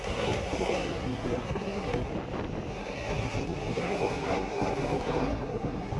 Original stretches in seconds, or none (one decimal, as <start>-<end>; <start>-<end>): 2.1-2.7